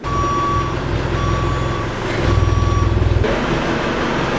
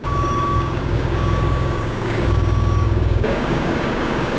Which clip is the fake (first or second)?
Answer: second